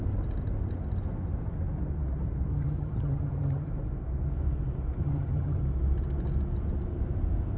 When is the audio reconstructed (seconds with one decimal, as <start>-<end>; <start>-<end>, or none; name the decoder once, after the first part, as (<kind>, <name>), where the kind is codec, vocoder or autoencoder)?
2.5-3.7 (vocoder, HiFi-GAN); 5.0-5.6